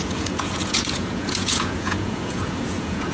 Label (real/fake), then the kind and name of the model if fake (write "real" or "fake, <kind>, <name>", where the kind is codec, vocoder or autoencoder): fake, vocoder, Vocos